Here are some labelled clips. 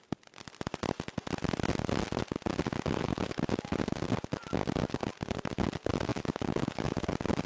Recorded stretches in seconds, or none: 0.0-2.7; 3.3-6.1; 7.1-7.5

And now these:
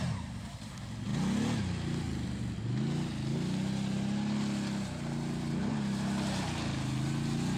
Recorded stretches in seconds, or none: 0.0-7.6